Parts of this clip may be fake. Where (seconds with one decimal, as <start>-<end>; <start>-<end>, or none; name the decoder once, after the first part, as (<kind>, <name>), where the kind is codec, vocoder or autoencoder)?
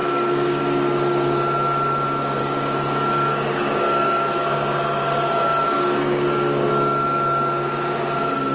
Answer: 0.0-0.6 (codec, DAC); 2.4-6.7